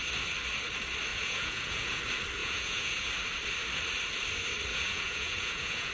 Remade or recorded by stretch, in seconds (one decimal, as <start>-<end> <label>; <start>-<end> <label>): 0.0-1.1 recorded; 1.1-2.0 remade; 2.0-2.4 recorded; 2.4-3.1 remade; 3.1-4.7 recorded; 4.7-5.9 remade